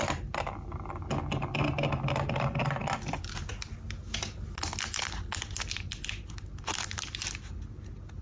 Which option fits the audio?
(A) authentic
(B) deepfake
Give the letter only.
A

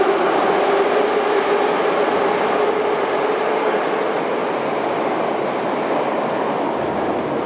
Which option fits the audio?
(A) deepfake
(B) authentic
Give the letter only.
B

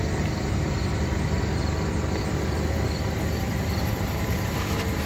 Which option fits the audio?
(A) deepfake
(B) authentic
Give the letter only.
B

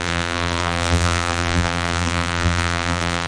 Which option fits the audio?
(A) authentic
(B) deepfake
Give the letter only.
B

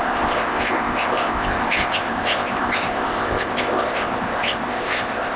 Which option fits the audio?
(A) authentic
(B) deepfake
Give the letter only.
B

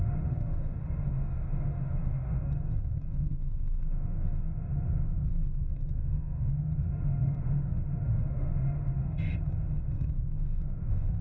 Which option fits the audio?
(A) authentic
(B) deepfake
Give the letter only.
B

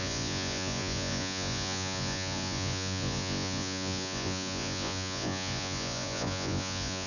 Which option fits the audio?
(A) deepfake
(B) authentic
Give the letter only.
A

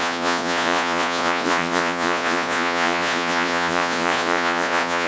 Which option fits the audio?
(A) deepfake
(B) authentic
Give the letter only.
A